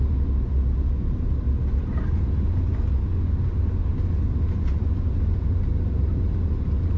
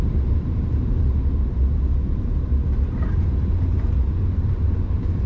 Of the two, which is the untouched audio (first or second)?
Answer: first